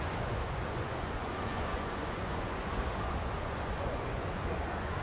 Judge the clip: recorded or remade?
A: remade